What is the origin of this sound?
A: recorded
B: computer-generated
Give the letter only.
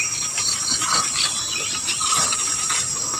A